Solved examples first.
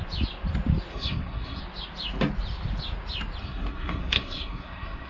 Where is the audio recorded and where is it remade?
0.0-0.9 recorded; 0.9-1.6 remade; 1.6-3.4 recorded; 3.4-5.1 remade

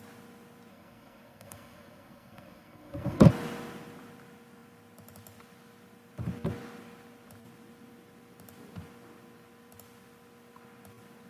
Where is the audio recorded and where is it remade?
0.0-0.7 recorded; 0.7-3.3 remade; 3.3-11.3 recorded

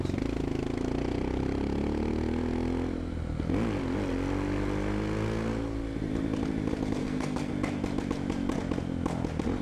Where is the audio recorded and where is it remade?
0.0-7.0 recorded; 7.0-7.5 remade; 7.5-9.6 recorded

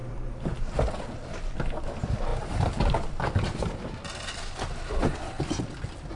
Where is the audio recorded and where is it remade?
0.0-6.2 recorded

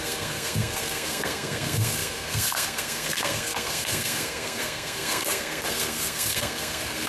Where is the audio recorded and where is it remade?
0.0-7.1 remade

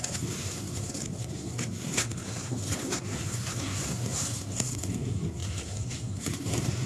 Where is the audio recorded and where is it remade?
0.0-6.9 remade

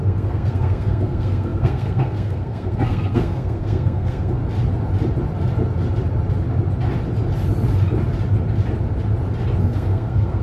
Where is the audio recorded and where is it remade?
0.0-4.4 remade; 4.4-9.6 recorded; 9.6-10.4 remade